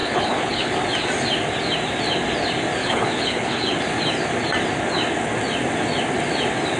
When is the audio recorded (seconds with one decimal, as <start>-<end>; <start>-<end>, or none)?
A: 0.7-2.8; 3.8-6.8